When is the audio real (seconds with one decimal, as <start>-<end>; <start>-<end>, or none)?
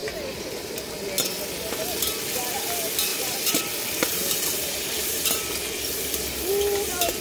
0.9-3.1; 3.6-4.6; 5.4-7.2